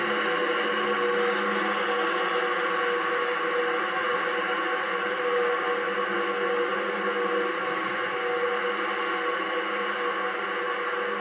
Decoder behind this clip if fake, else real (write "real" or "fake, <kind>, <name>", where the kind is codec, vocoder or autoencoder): real